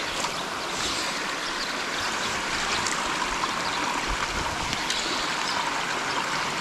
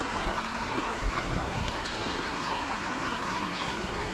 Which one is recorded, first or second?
first